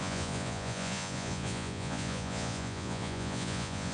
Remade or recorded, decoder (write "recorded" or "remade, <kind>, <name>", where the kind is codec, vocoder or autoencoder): remade, vocoder, Vocos